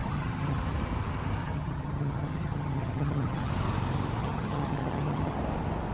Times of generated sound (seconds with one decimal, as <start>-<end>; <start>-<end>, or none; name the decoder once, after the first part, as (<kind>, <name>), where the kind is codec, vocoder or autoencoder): 0.0-0.6 (vocoder, HiFi-GAN); 1.4-3.5; 4.2-5.4